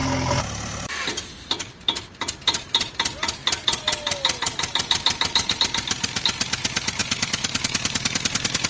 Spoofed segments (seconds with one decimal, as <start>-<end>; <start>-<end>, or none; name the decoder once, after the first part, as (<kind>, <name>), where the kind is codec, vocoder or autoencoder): none